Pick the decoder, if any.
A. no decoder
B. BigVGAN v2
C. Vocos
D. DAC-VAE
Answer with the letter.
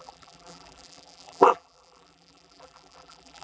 B